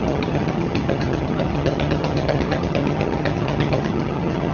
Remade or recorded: remade